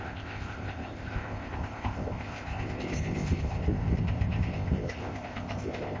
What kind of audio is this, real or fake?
fake